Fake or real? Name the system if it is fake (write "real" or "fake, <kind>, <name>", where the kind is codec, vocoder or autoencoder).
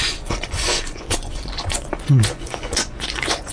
fake, vocoder, Vocos